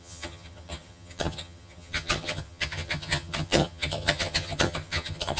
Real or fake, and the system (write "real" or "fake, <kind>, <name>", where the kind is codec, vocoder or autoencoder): fake, vocoder, HiFi-GAN